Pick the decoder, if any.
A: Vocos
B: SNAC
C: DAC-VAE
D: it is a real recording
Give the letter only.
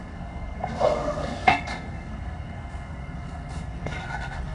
B